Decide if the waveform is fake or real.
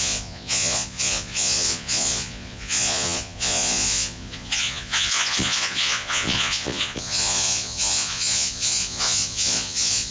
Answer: fake